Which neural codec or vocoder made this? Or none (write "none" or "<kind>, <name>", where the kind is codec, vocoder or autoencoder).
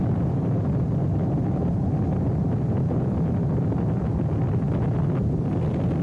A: none